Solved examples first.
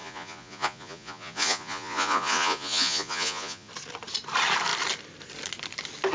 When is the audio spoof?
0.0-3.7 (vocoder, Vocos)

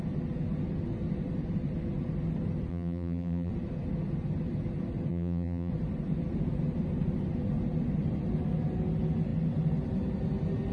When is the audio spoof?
2.7-3.5 (vocoder, BigVGAN v2); 5.1-5.7

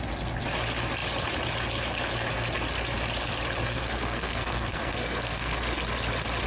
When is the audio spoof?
3.7-5.5 (codec, SNAC)